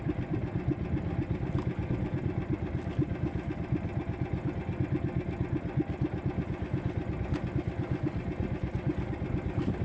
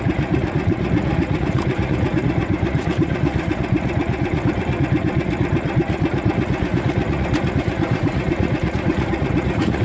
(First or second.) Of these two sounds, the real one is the first